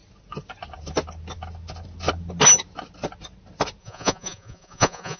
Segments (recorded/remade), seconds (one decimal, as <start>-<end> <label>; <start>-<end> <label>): 0.0-3.8 recorded; 3.8-5.2 remade